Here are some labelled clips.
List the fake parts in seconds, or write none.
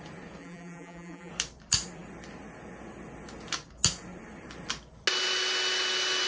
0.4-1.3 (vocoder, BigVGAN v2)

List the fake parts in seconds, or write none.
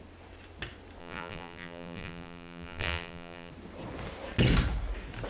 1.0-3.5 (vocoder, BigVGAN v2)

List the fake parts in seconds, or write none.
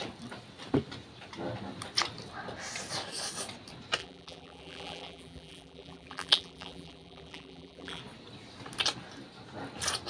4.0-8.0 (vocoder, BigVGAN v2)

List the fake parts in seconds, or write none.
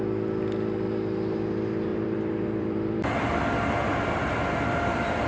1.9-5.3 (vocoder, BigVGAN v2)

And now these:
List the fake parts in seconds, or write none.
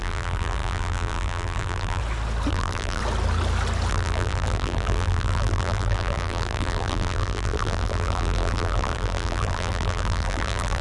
0.0-2.0 (vocoder, BigVGAN v2); 2.5-3.0; 3.9-10.8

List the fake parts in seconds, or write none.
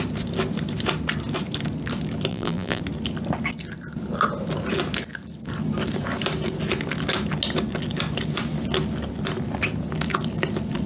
2.3-2.8 (vocoder, BigVGAN v2)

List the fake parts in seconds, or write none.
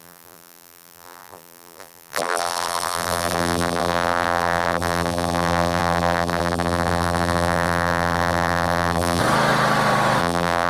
0.0-9.2 (vocoder, BigVGAN v2); 10.2-10.7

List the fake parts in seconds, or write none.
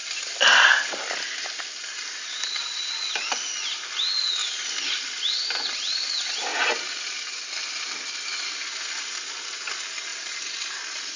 0.0-1.8 (vocoder, BigVGAN v2); 4.4-5.3; 6.5-7.5